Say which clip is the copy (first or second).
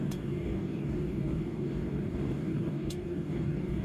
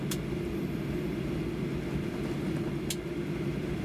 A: first